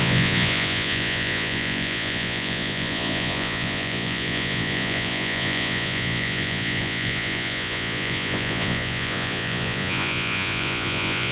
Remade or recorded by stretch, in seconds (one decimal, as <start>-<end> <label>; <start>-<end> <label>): 0.0-11.3 remade